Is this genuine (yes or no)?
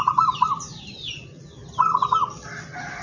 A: yes